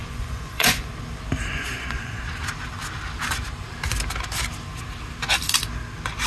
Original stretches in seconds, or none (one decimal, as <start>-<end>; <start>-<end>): 0.9-1.5; 2.2-6.3

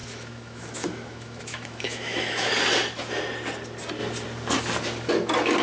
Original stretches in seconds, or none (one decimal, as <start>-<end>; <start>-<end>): 2.5-5.6

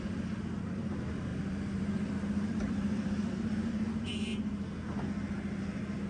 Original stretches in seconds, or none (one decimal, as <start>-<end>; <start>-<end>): 4.3-5.6